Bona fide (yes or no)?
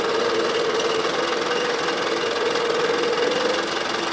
yes